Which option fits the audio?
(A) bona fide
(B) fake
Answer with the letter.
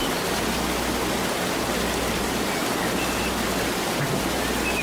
A